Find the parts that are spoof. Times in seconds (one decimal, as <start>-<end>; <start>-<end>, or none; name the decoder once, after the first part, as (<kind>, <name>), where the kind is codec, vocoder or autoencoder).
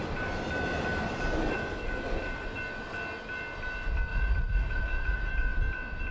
4.1-5.3 (vocoder, Vocos)